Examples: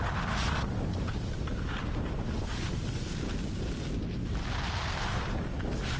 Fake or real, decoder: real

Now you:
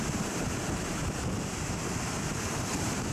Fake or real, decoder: fake, vocoder, BigVGAN v2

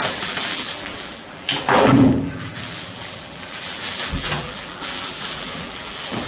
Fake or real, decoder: fake, vocoder, BigVGAN v2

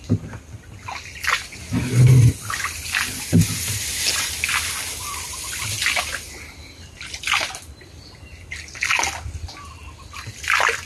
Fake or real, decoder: real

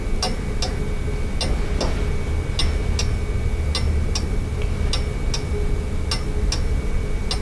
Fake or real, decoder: real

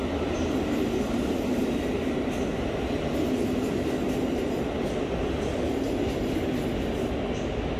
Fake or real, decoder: real